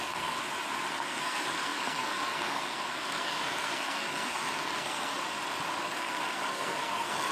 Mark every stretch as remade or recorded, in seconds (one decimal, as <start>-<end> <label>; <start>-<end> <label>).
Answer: 0.0-0.4 remade; 0.4-0.9 recorded; 0.9-5.2 remade; 5.2-5.8 recorded; 5.8-7.3 remade